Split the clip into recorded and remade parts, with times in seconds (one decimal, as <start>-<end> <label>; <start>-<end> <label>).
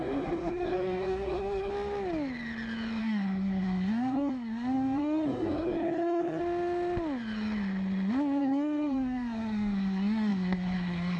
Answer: 0.0-1.7 remade; 1.7-3.0 recorded; 3.0-6.4 remade; 6.4-8.4 recorded; 8.4-11.2 remade